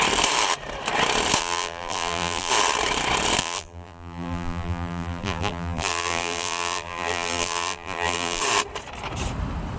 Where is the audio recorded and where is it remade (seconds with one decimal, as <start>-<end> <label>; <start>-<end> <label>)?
0.0-1.4 recorded; 1.4-2.5 remade; 2.5-3.4 recorded; 3.4-8.4 remade; 8.4-9.8 recorded